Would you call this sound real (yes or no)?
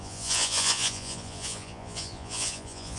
no